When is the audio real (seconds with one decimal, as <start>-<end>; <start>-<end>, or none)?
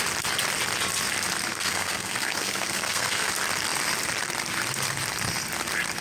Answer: 0.0-1.5; 3.3-6.0